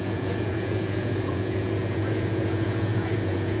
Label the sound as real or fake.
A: fake